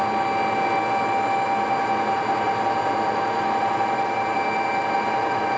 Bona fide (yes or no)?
yes